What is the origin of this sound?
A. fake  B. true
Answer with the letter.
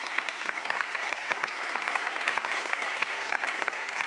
A